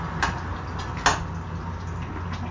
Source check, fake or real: real